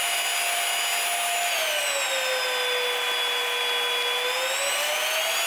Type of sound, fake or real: real